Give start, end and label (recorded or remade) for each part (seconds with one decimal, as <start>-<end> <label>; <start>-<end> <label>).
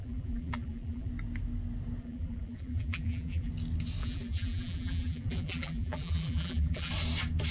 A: 0.0-1.1 remade; 1.1-2.0 recorded; 2.0-3.5 remade; 3.5-4.0 recorded; 4.0-6.9 remade; 6.9-7.5 recorded